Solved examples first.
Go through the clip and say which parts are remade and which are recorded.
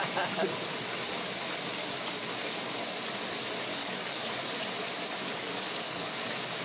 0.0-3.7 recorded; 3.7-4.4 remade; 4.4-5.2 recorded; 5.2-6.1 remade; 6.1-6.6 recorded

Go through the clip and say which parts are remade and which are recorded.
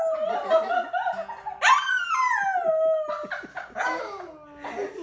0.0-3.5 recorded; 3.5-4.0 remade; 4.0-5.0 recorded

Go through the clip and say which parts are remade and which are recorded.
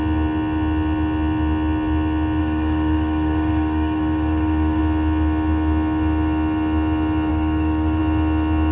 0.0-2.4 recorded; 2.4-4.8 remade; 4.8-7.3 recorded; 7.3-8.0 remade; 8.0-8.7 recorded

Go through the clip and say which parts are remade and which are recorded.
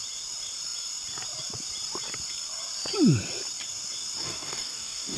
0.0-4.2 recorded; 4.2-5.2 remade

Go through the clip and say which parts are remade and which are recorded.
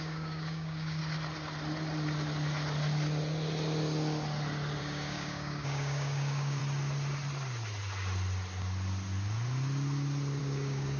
0.0-1.0 remade; 1.0-4.8 recorded; 4.8-6.6 remade; 6.6-10.4 recorded; 10.4-11.0 remade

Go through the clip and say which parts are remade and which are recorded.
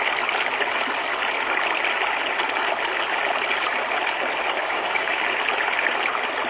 0.0-4.6 recorded; 4.6-5.2 remade; 5.2-6.5 recorded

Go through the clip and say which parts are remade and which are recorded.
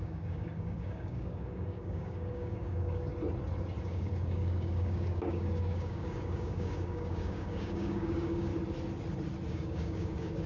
0.0-3.1 remade; 3.1-3.8 recorded; 3.8-8.5 remade; 8.5-9.5 recorded; 9.5-10.5 remade